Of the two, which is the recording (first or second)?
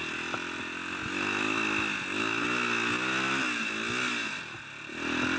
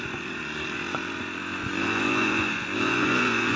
first